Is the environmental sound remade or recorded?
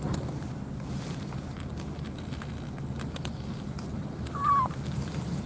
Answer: recorded